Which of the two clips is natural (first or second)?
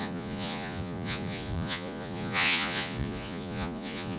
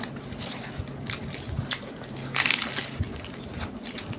second